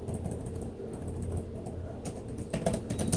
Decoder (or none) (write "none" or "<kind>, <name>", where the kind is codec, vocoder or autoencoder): none